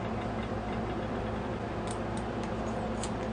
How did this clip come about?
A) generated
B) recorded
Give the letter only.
B